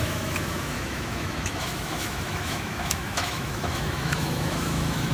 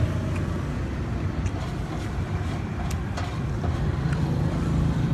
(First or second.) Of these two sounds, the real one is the second